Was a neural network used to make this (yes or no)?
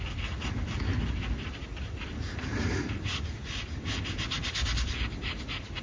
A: no